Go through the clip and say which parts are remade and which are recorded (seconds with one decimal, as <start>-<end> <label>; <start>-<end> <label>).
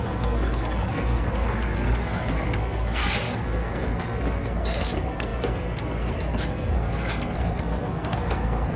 0.0-8.8 remade